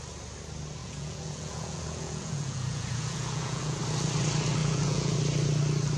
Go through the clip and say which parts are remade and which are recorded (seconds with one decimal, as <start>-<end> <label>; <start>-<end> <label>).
0.0-0.8 recorded; 0.8-3.8 remade; 3.8-4.6 recorded; 4.6-5.1 remade; 5.1-6.0 recorded